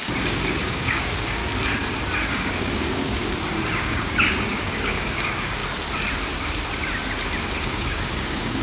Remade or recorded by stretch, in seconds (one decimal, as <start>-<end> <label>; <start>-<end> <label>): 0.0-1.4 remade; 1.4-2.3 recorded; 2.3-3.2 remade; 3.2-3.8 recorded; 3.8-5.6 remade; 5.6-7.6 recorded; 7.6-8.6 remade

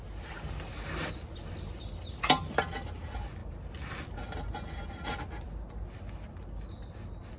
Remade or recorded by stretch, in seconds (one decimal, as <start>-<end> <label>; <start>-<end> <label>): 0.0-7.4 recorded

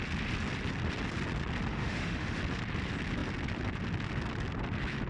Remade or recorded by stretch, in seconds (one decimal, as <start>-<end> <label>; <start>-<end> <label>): 0.0-1.7 recorded; 1.7-2.4 remade; 2.4-5.1 recorded

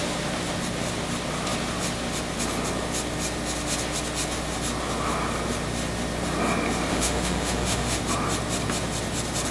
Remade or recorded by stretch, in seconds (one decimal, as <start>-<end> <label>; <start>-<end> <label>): 0.0-6.9 recorded; 6.9-8.0 remade; 8.0-9.5 recorded